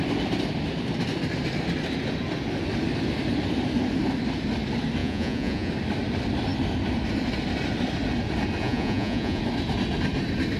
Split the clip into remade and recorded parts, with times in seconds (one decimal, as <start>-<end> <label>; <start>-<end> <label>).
0.0-5.0 recorded; 5.0-5.7 remade; 5.7-8.6 recorded; 8.6-9.4 remade; 9.4-10.6 recorded